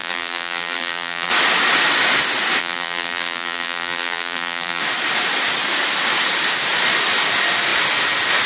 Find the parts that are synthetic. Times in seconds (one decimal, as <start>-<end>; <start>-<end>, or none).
0.0-1.3; 2.6-4.8